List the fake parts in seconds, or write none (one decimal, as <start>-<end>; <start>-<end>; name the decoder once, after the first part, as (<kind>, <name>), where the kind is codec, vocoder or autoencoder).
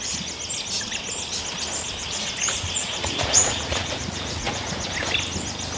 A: 2.0-4.9 (vocoder, Vocos)